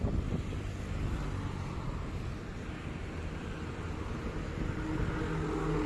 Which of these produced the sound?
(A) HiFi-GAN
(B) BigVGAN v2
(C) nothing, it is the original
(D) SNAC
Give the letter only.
C